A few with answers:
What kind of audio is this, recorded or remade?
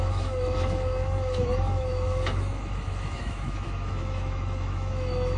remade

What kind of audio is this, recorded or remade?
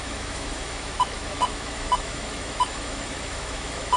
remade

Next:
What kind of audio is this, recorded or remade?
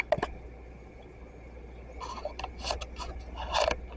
recorded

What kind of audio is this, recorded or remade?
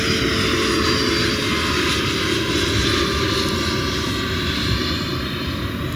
recorded